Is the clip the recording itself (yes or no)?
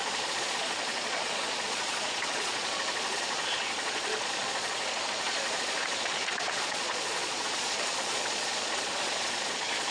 no